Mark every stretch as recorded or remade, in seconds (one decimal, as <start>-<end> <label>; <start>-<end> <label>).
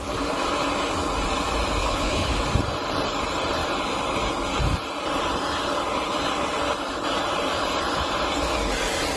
0.0-1.8 recorded; 1.8-2.4 remade; 2.4-9.2 recorded